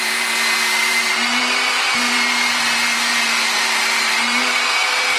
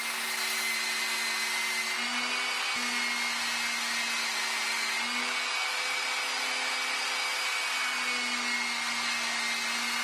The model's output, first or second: first